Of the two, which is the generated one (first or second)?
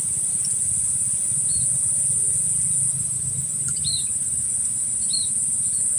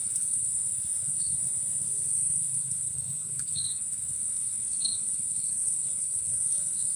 second